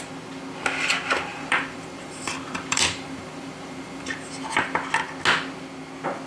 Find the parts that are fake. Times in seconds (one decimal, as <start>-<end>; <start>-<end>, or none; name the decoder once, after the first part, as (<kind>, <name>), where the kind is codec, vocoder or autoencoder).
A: 1.3-4.3 (vocoder, BigVGAN v2)